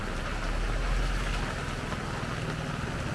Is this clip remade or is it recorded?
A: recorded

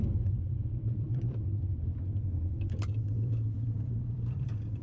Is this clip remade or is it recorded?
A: remade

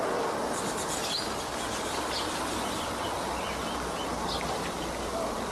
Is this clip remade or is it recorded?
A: recorded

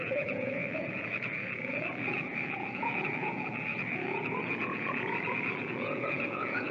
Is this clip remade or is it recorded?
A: remade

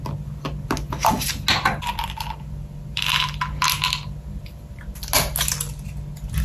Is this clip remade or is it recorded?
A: recorded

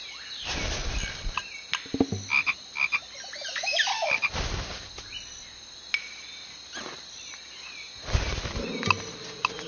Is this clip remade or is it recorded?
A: recorded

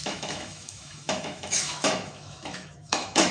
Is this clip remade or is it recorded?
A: remade